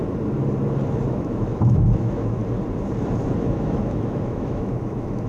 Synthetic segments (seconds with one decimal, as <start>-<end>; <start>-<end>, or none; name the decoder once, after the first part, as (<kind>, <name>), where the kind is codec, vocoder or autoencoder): 1.1-2.4 (autoencoder, DAC-VAE); 3.4-5.3